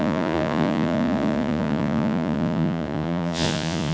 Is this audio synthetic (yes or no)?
yes